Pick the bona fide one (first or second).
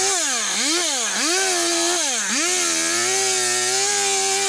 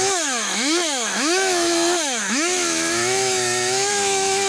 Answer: first